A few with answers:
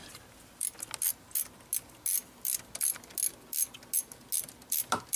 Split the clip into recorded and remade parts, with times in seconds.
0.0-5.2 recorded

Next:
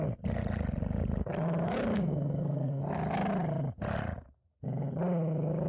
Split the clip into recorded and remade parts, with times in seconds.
0.0-1.9 recorded; 1.9-2.8 remade; 2.8-5.7 recorded

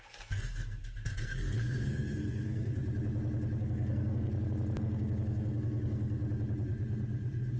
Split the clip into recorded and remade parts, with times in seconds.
0.0-2.8 remade; 2.8-3.6 recorded; 3.6-4.3 remade; 4.3-4.8 recorded; 4.8-6.2 remade; 6.2-7.6 recorded

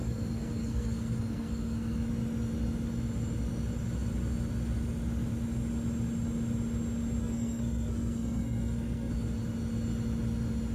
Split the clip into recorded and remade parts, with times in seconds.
0.0-2.1 remade; 2.1-7.2 recorded; 7.2-9.1 remade; 9.1-10.7 recorded

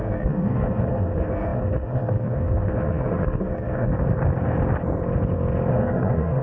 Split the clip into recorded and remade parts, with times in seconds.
0.0-3.9 remade; 3.9-5.7 recorded; 5.7-6.4 remade

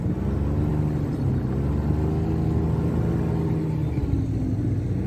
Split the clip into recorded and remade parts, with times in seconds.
0.0-5.1 recorded

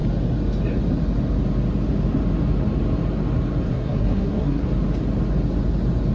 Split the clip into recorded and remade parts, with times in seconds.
0.0-3.7 recorded; 3.7-4.6 remade; 4.6-6.1 recorded